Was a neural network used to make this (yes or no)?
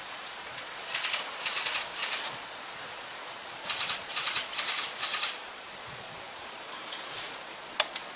yes